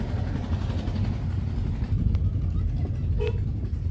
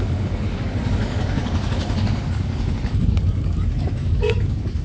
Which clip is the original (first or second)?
first